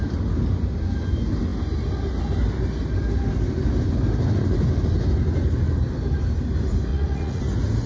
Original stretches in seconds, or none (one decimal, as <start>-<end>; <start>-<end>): 0.0-6.9; 7.4-7.9